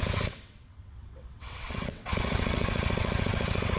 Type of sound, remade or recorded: remade